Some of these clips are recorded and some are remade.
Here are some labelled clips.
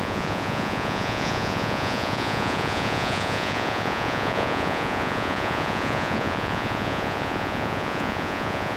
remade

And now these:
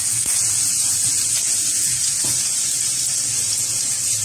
remade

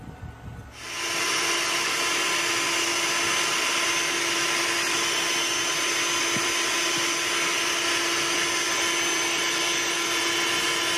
recorded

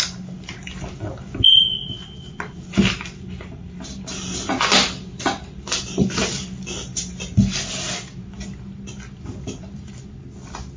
recorded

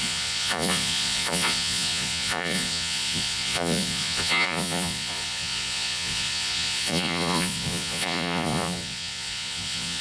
remade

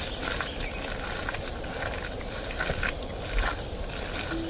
recorded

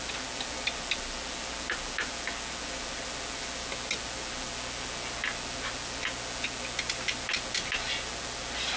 recorded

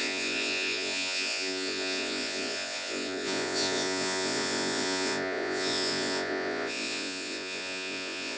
remade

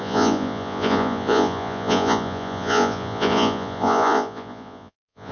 remade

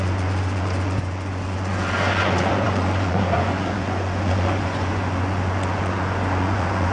remade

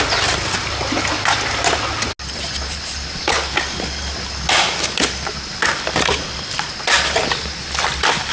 recorded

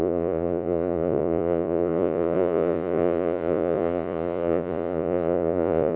remade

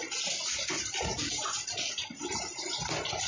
recorded